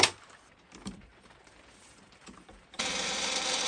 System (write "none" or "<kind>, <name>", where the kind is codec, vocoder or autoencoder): vocoder, BigVGAN v2